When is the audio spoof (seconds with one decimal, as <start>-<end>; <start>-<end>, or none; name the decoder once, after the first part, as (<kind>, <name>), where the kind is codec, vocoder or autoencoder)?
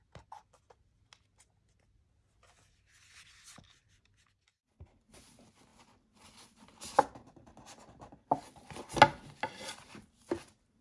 none